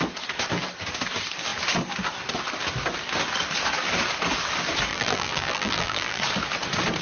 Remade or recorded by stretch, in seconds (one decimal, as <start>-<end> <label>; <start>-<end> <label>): 0.0-4.9 recorded; 4.9-6.2 remade; 6.2-7.0 recorded